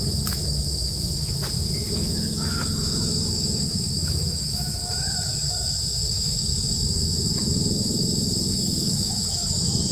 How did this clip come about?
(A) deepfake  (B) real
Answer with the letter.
A